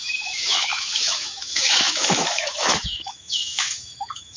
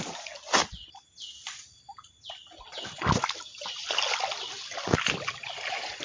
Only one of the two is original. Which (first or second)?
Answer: second